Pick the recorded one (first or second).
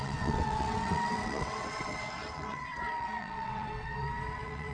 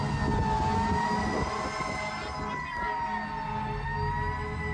second